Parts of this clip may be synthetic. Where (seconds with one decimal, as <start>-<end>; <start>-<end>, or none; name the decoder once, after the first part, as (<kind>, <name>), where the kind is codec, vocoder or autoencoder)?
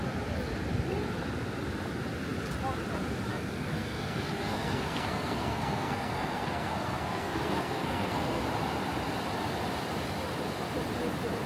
3.3-8.4 (codec, SNAC)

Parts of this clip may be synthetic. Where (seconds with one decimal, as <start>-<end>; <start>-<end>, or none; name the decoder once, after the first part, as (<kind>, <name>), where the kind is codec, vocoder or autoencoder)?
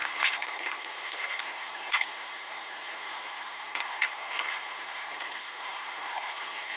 0.0-6.8 (codec, SNAC)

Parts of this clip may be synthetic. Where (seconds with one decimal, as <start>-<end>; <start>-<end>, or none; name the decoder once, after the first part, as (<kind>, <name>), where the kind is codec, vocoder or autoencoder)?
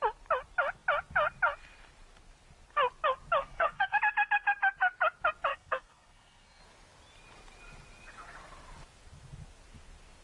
3.4-4.0 (codec, SNAC); 5.5-6.6